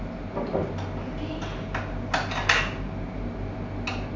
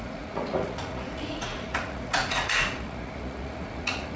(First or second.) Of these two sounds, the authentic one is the first